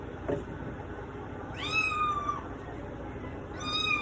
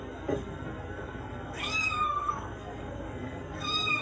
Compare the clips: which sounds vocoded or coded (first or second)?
second